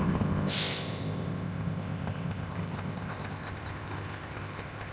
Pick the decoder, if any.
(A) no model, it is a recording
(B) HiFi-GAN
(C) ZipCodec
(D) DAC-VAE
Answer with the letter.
C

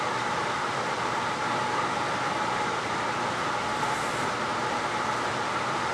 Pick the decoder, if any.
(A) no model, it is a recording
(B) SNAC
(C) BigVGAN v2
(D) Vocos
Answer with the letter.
C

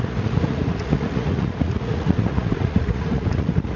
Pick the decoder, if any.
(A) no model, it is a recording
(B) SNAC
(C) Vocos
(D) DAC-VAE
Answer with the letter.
C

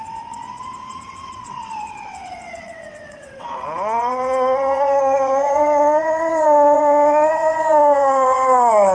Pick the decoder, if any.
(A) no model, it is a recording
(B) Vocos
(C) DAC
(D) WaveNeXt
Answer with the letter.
D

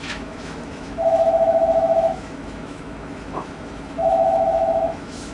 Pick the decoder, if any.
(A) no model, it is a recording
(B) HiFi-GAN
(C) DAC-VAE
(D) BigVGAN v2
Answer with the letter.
C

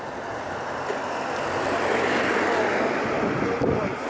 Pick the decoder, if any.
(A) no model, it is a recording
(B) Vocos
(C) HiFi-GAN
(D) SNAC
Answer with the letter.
A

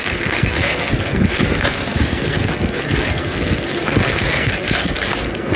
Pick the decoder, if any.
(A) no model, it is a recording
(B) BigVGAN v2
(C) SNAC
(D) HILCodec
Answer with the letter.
C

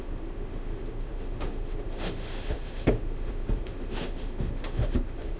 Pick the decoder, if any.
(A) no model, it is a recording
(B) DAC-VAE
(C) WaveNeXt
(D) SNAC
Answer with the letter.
B